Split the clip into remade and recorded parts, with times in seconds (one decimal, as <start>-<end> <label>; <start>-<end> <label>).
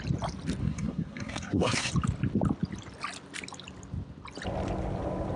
0.0-0.6 recorded; 0.6-1.9 remade; 1.9-5.4 recorded